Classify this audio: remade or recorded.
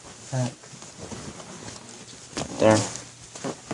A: recorded